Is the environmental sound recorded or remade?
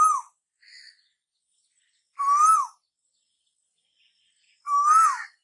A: recorded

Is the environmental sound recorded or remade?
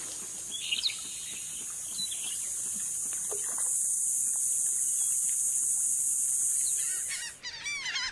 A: recorded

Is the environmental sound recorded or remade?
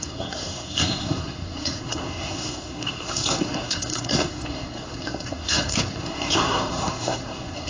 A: remade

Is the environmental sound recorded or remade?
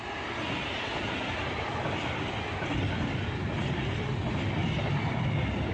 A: recorded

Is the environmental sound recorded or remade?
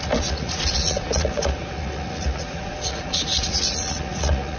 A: remade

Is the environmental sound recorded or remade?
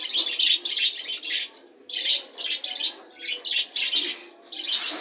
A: recorded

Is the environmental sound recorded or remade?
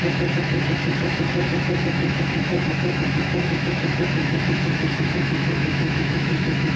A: remade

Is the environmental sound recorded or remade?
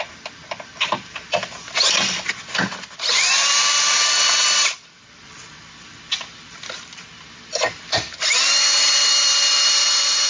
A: remade